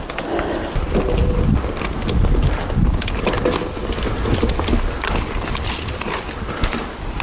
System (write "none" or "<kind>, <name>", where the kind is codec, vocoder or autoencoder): none